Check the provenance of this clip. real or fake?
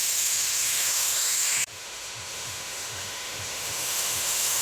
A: fake